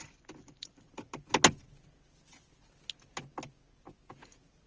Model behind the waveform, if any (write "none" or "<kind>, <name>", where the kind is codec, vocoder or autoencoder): none